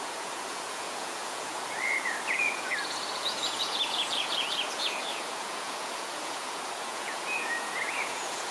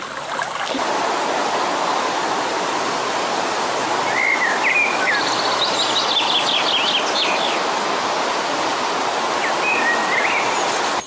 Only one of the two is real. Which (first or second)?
second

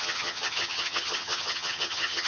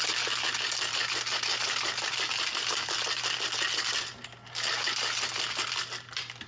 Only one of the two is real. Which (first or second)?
second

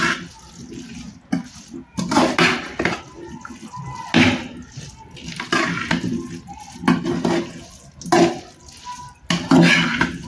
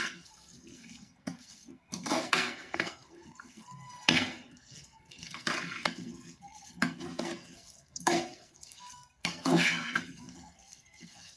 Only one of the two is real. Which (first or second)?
first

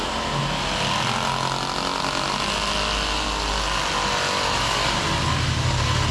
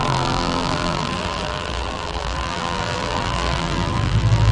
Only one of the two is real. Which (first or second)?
first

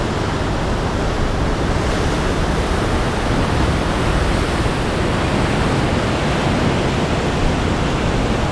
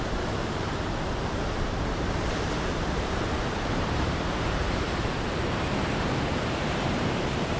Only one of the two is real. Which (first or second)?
first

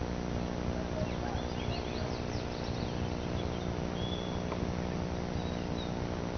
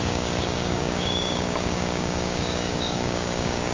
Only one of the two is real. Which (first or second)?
first